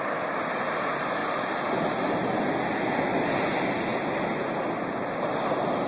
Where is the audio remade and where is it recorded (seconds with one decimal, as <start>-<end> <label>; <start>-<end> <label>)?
0.0-5.9 recorded